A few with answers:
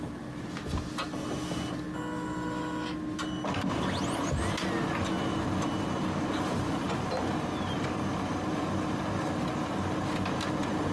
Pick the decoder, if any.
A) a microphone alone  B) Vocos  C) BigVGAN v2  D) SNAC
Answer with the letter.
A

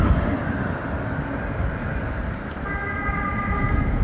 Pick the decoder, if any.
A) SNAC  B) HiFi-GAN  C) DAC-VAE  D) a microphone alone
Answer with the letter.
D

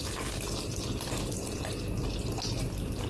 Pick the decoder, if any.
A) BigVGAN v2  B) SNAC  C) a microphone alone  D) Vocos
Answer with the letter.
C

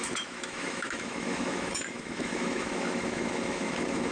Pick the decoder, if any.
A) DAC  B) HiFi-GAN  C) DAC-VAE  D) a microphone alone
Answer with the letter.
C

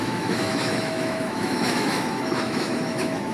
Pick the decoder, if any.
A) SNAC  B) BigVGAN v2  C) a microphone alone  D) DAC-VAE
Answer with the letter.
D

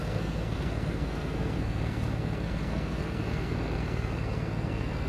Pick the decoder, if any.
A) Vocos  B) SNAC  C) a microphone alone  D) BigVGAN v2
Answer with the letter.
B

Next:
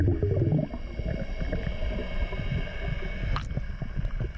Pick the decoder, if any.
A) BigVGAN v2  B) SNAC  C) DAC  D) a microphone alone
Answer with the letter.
D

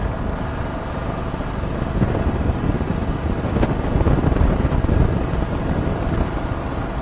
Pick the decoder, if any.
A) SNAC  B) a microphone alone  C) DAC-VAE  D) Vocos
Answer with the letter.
B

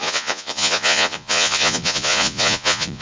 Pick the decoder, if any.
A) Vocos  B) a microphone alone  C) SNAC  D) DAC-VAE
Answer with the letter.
A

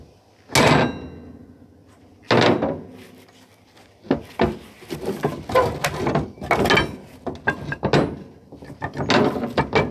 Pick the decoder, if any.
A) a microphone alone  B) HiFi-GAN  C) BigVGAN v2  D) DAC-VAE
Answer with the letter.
A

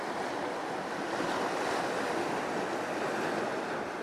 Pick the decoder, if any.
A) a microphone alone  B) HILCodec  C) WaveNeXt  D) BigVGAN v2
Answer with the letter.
A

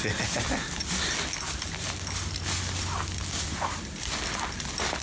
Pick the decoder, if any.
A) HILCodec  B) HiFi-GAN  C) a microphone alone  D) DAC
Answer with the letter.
C